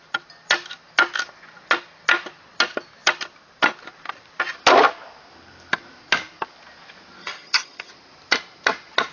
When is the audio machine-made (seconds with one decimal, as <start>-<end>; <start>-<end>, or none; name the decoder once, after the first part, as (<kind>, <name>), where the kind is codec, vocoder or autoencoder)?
7.2-7.9 (vocoder, HiFi-GAN)